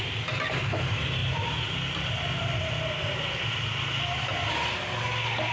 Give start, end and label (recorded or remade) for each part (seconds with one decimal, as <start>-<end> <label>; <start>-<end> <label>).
0.0-5.5 recorded